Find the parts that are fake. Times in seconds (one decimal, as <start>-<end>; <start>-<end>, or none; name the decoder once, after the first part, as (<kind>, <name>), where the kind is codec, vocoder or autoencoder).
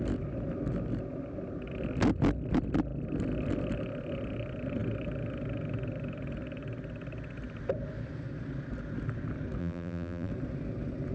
9.6-10.3 (vocoder, BigVGAN v2)